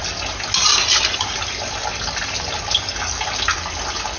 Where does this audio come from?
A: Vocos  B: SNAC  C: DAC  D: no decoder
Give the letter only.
D